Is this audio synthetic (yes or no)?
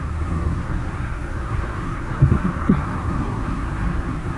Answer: yes